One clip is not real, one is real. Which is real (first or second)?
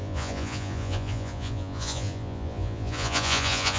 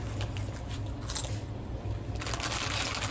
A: second